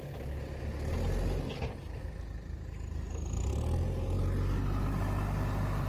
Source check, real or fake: real